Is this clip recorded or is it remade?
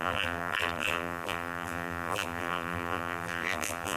remade